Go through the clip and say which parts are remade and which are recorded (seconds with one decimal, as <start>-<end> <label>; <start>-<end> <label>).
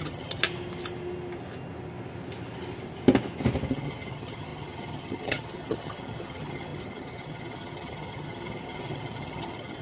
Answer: 0.0-0.4 remade; 0.4-3.7 recorded; 3.7-9.8 remade